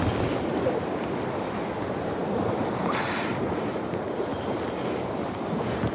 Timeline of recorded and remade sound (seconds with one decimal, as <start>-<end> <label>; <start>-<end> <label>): 0.0-5.9 recorded